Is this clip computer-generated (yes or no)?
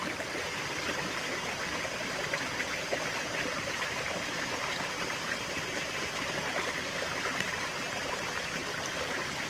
no